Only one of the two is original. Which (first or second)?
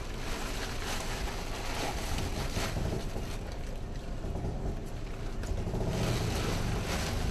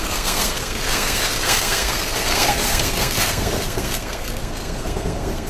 first